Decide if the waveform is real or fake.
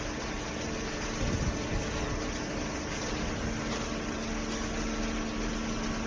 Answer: real